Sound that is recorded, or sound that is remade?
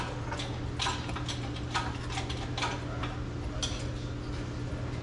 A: recorded